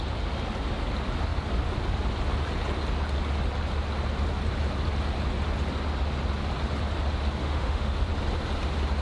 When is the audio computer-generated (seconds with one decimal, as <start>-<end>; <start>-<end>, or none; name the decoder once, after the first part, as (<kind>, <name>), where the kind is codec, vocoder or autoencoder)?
7.4-8.0 (autoencoder, DAC-VAE)